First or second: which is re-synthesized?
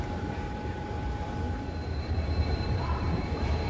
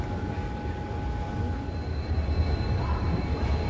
first